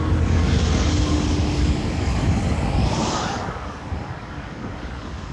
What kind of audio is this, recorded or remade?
remade